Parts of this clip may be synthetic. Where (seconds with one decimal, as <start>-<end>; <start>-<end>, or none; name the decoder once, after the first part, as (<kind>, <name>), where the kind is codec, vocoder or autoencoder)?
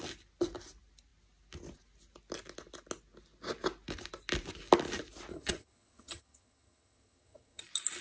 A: 5.3-7.6 (vocoder, HiFi-GAN)